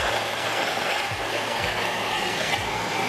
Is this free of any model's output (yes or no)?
no